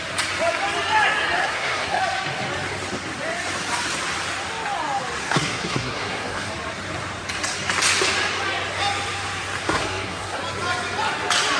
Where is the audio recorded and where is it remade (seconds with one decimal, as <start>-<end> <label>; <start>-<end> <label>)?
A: 0.0-1.4 recorded; 1.4-2.0 remade; 2.0-5.2 recorded; 5.2-6.5 remade; 6.5-9.6 recorded; 9.6-10.4 remade; 10.4-11.6 recorded